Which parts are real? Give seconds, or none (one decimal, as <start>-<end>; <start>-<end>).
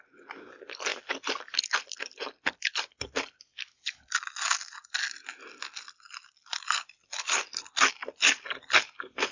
0.0-0.9; 3.4-9.3